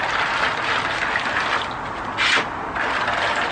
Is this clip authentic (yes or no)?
yes